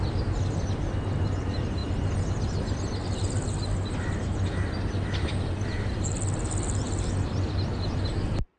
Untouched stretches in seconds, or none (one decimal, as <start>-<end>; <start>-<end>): 0.0-8.6